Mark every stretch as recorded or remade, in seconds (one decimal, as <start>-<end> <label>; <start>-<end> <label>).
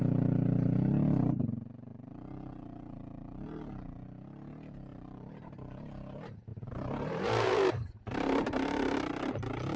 0.0-4.9 recorded; 4.9-5.9 remade; 5.9-6.5 recorded; 6.5-9.1 remade; 9.1-9.8 recorded